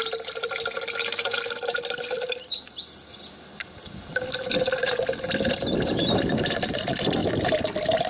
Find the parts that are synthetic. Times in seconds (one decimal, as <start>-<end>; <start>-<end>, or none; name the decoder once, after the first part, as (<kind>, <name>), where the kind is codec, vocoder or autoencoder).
none